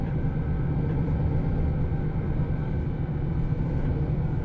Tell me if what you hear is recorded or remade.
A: recorded